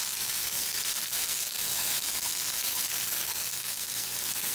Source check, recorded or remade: remade